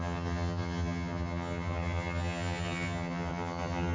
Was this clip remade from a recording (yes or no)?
yes